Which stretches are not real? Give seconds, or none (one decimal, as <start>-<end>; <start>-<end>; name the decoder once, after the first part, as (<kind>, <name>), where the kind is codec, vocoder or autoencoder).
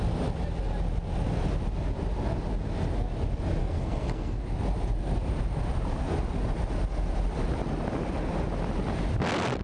3.6-4.4 (codec, SNAC)